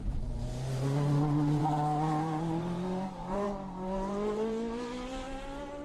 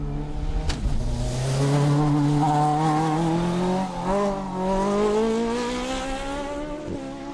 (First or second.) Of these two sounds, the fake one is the first